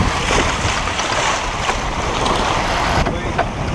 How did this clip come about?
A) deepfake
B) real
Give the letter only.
B